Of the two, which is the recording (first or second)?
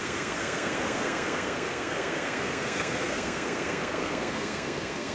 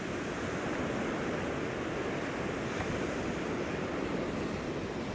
second